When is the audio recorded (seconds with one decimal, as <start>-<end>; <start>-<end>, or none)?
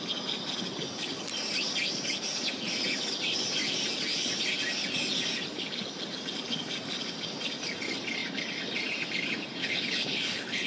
0.0-9.6